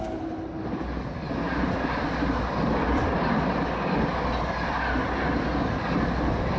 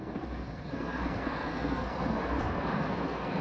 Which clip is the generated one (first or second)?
second